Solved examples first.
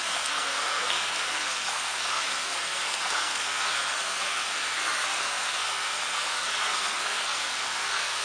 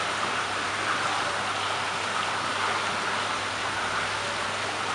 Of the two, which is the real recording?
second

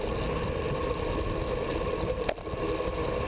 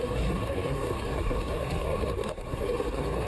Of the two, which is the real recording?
first